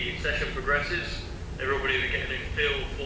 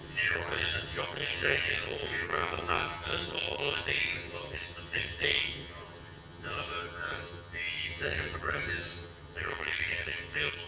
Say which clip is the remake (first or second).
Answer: second